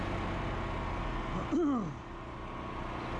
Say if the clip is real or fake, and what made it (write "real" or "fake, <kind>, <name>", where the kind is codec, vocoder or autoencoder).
real